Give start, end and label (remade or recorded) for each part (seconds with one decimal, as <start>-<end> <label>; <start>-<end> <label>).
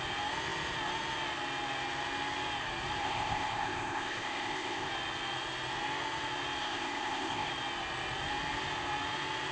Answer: 0.0-3.0 recorded; 3.0-4.9 remade; 4.9-6.6 recorded; 6.6-7.5 remade; 7.5-9.5 recorded